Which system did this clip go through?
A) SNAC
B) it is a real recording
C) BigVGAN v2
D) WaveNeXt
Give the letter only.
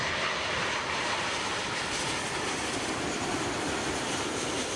C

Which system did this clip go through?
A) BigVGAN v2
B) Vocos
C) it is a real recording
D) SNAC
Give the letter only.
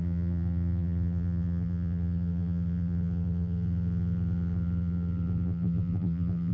A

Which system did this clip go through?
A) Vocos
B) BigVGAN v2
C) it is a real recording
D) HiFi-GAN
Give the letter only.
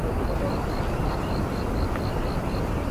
C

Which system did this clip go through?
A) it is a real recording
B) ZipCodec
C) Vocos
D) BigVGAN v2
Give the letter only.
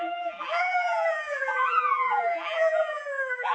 D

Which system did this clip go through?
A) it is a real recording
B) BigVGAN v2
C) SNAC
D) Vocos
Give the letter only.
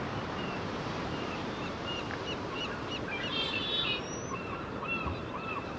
B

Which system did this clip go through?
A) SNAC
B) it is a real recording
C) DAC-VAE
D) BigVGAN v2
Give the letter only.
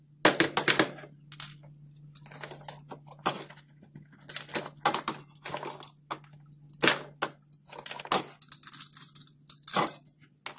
B